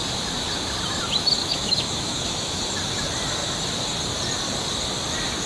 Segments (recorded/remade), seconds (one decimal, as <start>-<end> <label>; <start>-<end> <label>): 0.0-1.4 recorded; 1.4-2.6 remade; 2.6-5.5 recorded